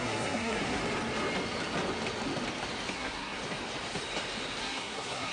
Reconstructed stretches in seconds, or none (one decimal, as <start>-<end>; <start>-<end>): 0.0-0.8; 2.9-3.4; 4.6-5.3

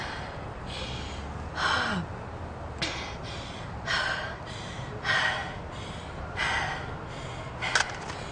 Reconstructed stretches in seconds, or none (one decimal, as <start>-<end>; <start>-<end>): none

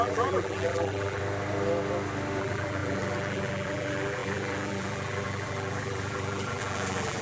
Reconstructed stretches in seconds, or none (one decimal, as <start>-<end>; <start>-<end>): 0.0-1.2; 2.4-7.2

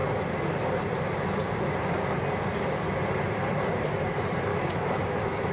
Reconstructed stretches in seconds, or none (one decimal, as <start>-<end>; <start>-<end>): 4.5-5.5